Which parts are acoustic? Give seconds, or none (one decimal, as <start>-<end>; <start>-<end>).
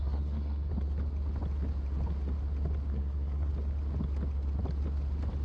0.7-2.9; 3.5-5.4